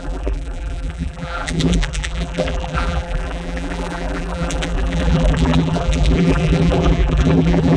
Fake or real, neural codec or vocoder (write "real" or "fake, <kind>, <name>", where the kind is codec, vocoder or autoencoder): fake, vocoder, BigVGAN v2